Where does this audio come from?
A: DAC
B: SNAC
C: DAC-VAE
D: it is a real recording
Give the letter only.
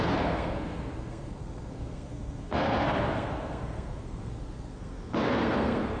B